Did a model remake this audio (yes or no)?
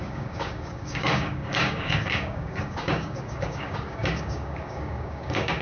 yes